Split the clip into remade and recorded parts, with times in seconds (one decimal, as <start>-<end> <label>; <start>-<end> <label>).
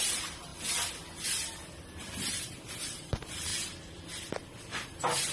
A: 0.0-0.5 remade; 0.5-1.9 recorded; 1.9-3.5 remade; 3.5-5.3 recorded